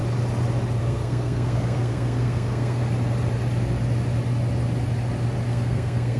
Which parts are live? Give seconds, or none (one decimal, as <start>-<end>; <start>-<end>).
0.0-0.8; 2.8-5.5